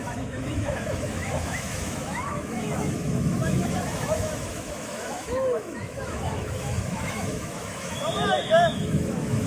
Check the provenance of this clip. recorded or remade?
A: remade